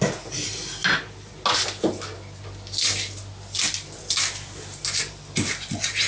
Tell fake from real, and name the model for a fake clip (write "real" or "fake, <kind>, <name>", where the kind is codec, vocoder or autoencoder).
real